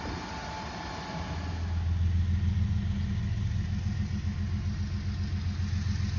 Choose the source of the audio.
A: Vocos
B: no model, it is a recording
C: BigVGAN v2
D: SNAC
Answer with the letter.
B